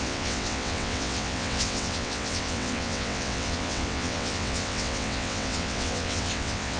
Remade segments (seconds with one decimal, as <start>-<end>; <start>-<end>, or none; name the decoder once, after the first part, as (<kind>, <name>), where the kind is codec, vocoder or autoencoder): 0.0-6.8 (vocoder, WaveNeXt)